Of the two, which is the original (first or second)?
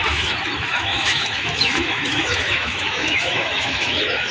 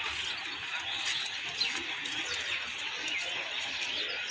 second